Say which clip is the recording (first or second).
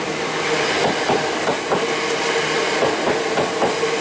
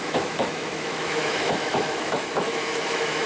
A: first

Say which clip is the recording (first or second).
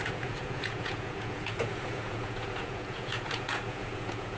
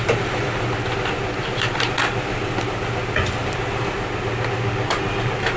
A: second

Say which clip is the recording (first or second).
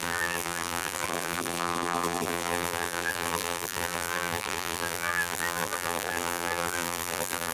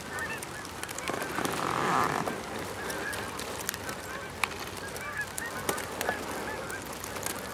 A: second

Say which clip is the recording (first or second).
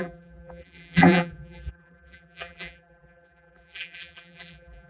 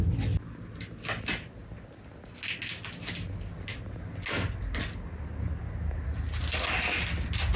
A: second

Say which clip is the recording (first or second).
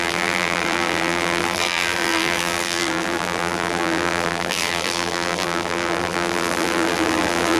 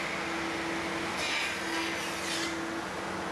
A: second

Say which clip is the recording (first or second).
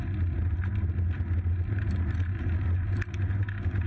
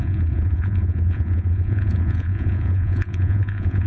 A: first